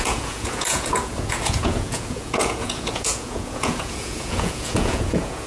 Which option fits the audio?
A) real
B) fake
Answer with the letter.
B